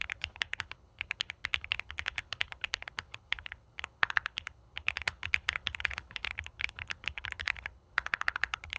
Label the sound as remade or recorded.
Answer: remade